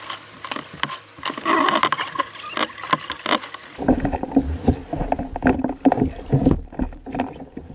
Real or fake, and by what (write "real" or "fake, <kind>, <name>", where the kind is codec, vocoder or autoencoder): real